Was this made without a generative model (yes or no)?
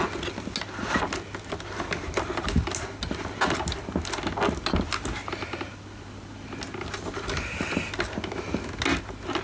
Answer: yes